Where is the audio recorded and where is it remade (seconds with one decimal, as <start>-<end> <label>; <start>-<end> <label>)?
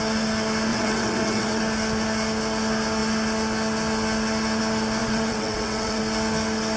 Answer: 0.0-0.7 recorded; 0.7-1.6 remade; 1.6-5.0 recorded; 5.0-6.0 remade; 6.0-6.8 recorded